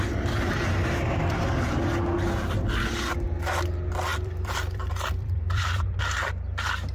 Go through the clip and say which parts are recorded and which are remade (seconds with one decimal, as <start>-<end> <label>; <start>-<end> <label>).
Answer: 0.0-4.1 recorded; 4.1-6.0 remade; 6.0-6.9 recorded